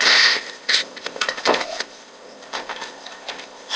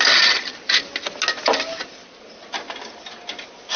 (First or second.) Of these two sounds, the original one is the second